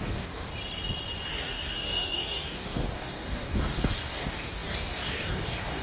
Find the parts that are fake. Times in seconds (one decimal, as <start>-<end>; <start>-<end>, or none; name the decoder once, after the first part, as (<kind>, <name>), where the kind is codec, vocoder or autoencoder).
0.0-0.5 (codec, DAC); 1.3-5.8